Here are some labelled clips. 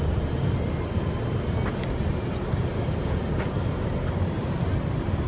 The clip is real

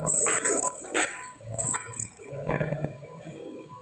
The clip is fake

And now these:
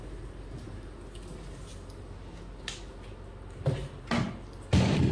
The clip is real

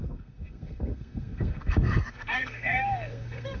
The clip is fake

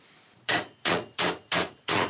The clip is fake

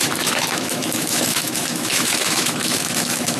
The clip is fake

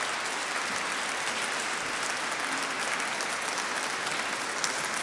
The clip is real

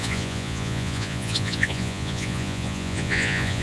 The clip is fake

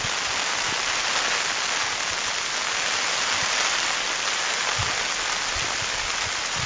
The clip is real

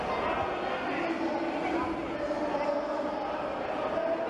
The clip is real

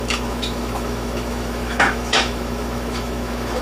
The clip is fake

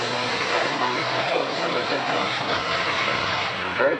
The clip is fake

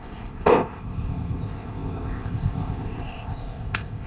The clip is fake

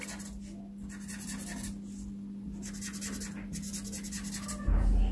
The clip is real